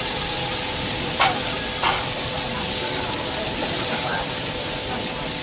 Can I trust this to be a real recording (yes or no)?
yes